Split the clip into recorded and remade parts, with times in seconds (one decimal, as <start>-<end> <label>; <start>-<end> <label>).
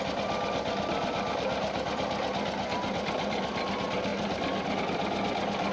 0.0-5.7 recorded